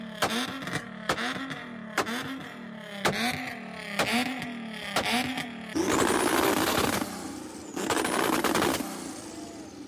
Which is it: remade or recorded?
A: recorded